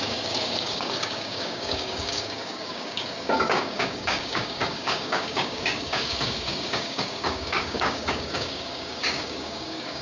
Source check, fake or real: fake